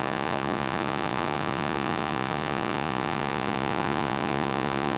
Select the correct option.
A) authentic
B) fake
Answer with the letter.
B